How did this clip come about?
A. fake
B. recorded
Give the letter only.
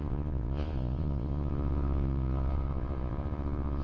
A